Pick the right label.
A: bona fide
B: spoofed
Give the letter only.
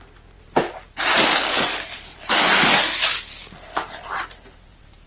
A